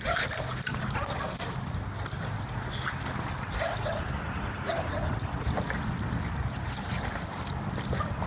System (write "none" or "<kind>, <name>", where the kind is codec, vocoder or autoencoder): none